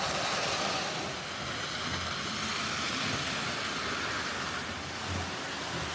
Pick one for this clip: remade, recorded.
recorded